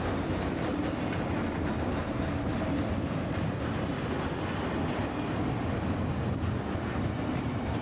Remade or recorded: recorded